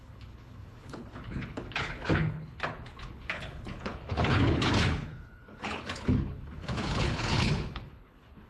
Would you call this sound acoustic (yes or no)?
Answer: no